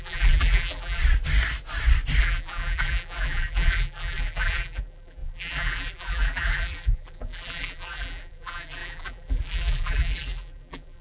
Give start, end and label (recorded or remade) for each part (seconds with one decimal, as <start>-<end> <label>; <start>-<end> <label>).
0.0-1.0 remade; 1.0-2.2 recorded; 2.2-11.0 remade